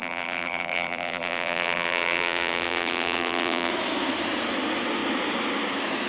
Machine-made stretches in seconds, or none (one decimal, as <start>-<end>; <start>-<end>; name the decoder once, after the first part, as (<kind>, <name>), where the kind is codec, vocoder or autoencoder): 0.0-3.7 (vocoder, BigVGAN v2)